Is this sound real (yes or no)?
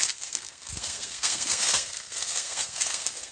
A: no